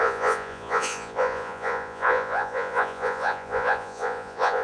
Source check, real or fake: fake